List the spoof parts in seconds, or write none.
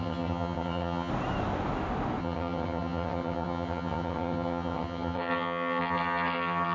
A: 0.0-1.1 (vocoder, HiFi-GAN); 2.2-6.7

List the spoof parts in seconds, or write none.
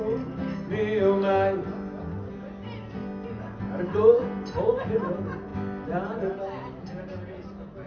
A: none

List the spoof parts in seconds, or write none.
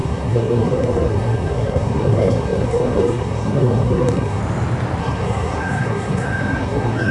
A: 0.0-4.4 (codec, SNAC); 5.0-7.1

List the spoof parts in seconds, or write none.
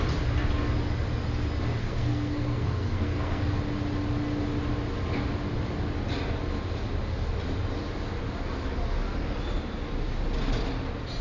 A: 1.8-3.6 (codec, SNAC)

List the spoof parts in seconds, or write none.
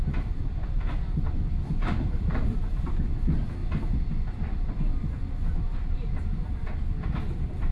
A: none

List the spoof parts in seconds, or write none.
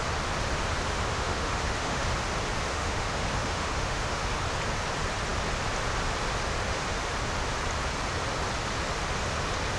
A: 1.1-2.0 (autoencoder, DAC-VAE); 2.7-4.3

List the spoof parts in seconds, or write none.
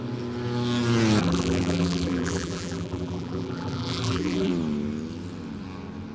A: 1.2-4.5 (vocoder, BigVGAN v2)